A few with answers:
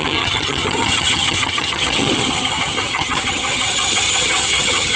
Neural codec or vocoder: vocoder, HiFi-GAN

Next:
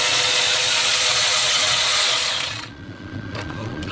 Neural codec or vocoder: vocoder, Vocos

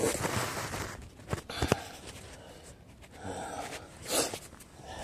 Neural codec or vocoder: none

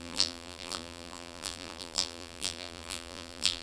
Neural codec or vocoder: vocoder, BigVGAN v2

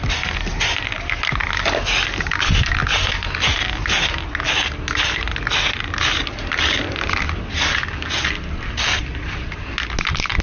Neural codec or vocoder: none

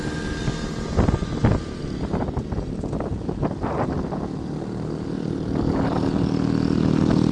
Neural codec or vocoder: none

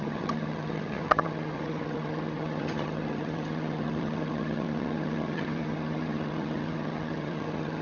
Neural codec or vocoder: vocoder, HiFi-GAN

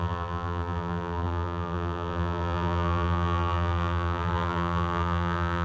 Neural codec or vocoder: vocoder, BigVGAN v2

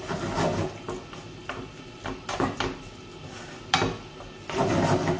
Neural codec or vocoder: none